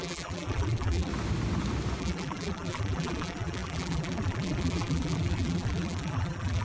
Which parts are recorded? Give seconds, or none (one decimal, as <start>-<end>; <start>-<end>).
1.1-2.0